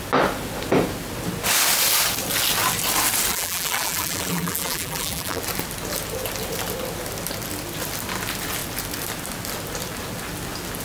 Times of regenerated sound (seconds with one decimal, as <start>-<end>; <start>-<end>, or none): 3.3-5.4